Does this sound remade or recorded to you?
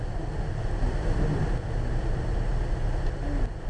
recorded